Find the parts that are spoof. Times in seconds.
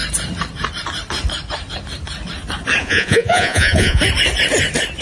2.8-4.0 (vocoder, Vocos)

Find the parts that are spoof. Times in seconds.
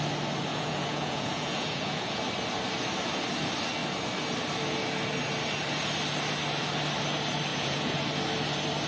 0.5-2.2 (vocoder, Vocos); 7.5-8.0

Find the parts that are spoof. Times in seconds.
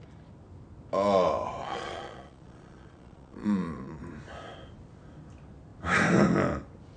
1.6-4.0 (vocoder, Vocos)